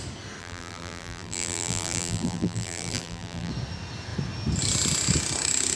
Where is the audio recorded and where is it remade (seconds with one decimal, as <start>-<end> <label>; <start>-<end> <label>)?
0.0-0.4 recorded; 0.4-3.5 remade; 3.5-5.8 recorded